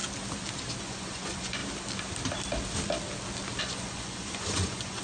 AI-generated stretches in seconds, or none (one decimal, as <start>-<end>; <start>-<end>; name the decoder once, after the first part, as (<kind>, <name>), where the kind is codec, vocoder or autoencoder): 0.8-1.6 (vocoder, Vocos); 3.6-5.0